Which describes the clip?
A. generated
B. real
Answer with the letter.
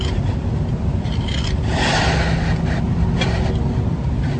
B